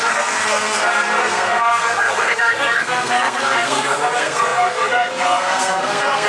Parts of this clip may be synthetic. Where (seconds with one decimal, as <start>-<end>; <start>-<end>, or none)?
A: 0.0-6.3

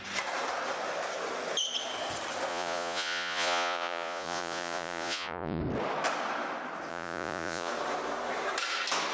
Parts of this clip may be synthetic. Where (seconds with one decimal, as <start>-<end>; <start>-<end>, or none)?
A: 2.5-5.6; 6.9-7.7

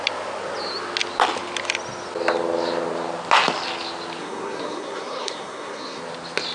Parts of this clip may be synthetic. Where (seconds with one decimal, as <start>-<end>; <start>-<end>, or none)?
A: 4.2-6.0

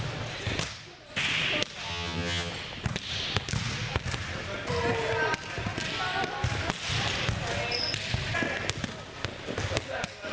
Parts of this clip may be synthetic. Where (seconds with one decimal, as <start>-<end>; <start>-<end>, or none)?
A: 1.9-2.5

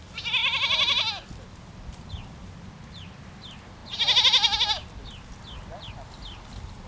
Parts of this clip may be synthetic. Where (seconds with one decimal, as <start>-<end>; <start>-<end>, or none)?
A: none

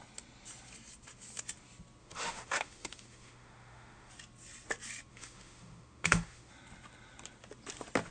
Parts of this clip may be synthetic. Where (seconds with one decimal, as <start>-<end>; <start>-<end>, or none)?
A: 2.0-4.1; 5.1-6.5

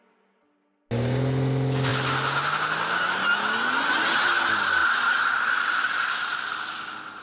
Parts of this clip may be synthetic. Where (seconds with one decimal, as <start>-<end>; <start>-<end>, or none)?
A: none

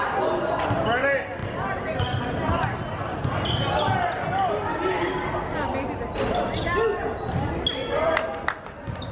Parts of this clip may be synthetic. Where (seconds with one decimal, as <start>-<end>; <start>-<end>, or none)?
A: none